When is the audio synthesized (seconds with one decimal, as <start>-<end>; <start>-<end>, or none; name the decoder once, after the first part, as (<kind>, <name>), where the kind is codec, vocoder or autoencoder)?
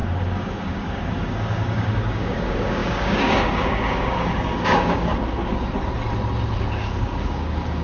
0.0-5.5 (codec, DAC); 6.6-7.8